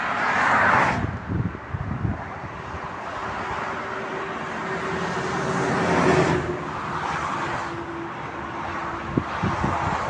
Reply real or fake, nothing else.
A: real